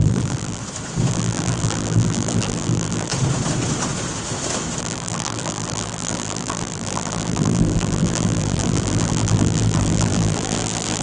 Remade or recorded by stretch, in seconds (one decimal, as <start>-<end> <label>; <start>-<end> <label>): 0.0-0.6 remade; 0.6-1.1 recorded; 1.1-3.1 remade; 3.1-4.8 recorded; 4.8-11.0 remade